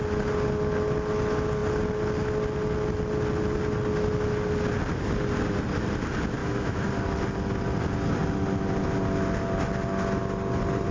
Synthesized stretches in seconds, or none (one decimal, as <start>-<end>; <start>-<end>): 6.4-6.9

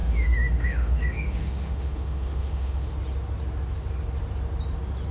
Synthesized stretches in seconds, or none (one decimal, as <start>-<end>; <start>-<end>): 0.0-2.9

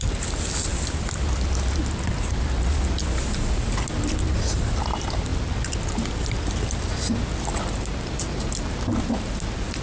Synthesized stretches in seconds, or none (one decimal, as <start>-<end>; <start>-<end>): none

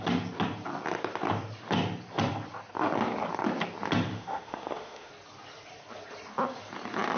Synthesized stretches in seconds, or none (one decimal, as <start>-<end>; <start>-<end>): 4.1-5.1

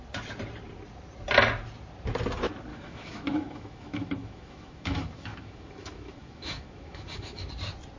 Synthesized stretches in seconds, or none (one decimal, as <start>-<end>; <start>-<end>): 2.7-7.5